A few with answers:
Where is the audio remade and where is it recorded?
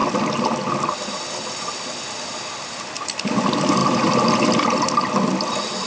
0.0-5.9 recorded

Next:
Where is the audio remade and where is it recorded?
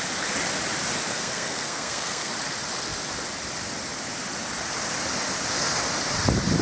0.0-1.1 recorded; 1.1-2.3 remade; 2.3-6.6 recorded